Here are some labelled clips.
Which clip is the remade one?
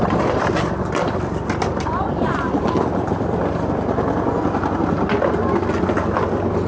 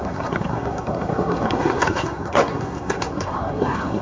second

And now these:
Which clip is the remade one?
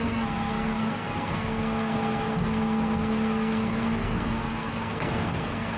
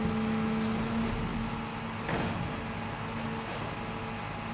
first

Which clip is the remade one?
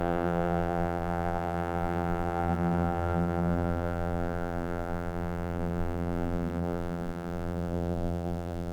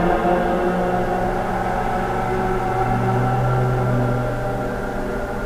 first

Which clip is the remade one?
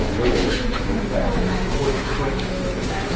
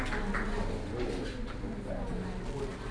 first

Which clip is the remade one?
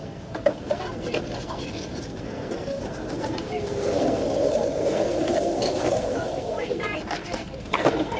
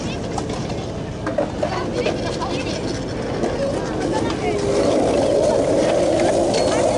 first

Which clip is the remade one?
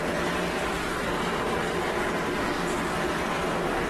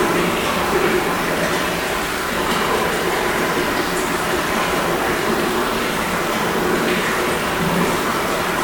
second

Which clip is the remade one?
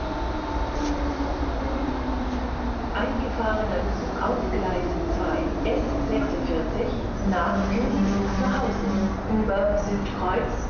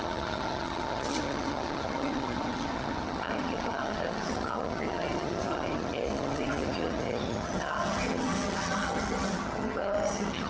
second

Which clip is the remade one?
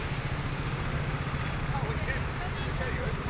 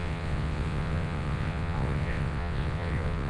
second